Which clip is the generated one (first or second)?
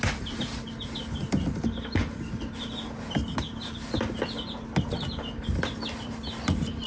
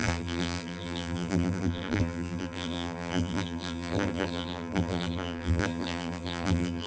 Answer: second